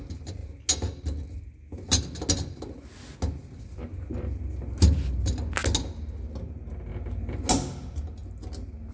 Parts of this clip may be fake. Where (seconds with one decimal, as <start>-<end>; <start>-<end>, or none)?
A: none